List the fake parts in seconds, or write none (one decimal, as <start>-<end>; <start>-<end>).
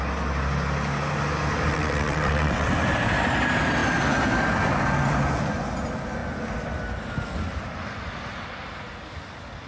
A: 1.7-2.7